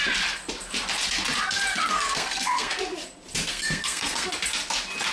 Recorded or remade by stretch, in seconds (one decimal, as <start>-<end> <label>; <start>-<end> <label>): 0.0-1.7 recorded; 1.7-2.8 remade; 2.8-3.5 recorded; 3.5-4.3 remade; 4.3-5.1 recorded